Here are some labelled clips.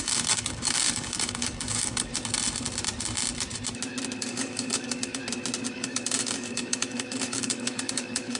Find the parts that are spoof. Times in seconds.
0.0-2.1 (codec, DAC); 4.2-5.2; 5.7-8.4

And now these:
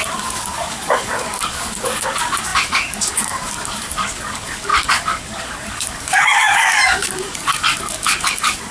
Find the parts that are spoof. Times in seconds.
0.0-8.7 (codec, DAC)

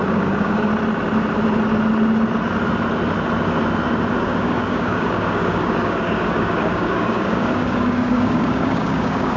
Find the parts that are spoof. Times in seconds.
0.0-0.7 (codec, DAC); 4.2-9.4

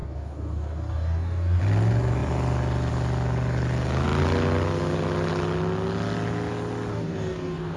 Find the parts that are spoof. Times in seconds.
0.0-1.6 (codec, DAC); 6.9-7.8

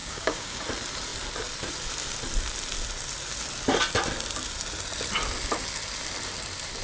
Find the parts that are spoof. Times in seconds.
0.0-0.6 (codec, DAC)

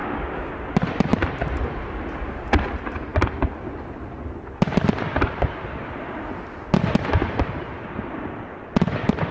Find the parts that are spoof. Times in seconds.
0.0-0.5 (codec, DAC)

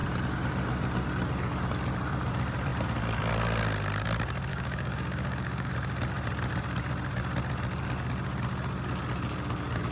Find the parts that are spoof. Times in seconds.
4.5-5.7 (codec, DAC)

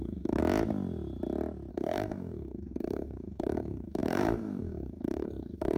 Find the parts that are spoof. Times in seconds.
0.0-0.4 (codec, DAC); 1.7-5.8